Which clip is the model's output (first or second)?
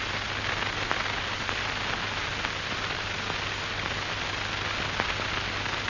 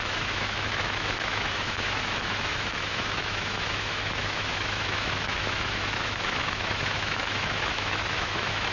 second